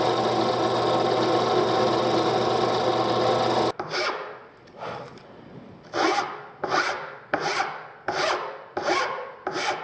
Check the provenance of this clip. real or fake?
real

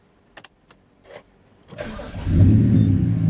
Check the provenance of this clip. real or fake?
real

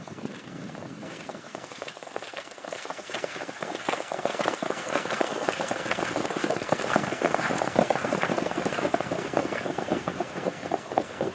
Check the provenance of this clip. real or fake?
fake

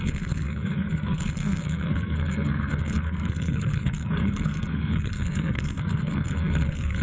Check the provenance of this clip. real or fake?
fake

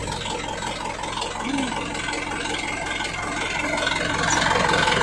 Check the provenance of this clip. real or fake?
real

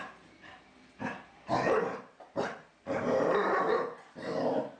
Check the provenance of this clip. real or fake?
fake